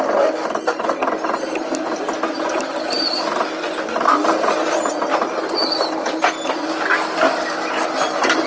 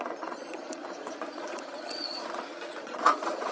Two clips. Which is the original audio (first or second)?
first